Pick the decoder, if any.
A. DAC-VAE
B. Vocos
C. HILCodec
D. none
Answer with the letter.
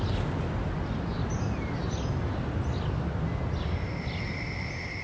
D